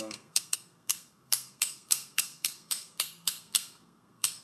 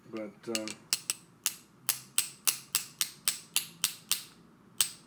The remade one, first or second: first